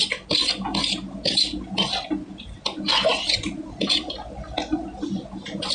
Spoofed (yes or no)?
no